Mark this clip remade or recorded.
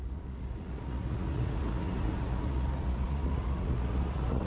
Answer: remade